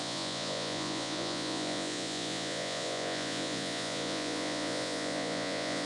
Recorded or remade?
remade